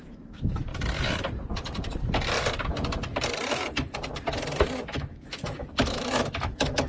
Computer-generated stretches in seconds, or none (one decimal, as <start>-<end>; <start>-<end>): 0.0-0.7; 4.8-6.9